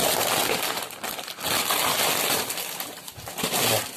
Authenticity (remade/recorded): recorded